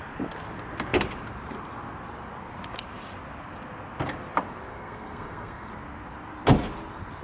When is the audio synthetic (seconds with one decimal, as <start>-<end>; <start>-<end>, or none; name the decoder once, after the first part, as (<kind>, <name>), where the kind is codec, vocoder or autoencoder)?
4.7-5.7 (codec, SNAC)